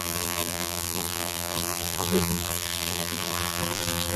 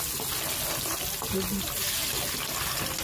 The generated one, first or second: first